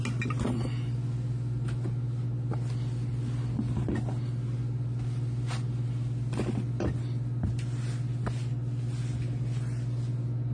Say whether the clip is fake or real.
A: real